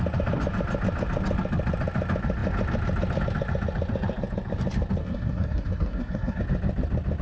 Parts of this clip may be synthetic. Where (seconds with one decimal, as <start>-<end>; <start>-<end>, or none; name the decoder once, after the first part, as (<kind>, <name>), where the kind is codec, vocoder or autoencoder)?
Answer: 5.0-6.4 (codec, SNAC)